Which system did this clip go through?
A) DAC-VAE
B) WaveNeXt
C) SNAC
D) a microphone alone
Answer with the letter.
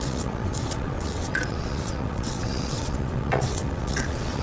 B